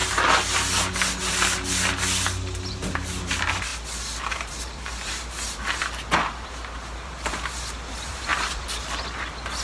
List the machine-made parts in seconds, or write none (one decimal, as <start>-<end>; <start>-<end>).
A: 2.7-3.7; 4.3-8.3; 9.0-9.6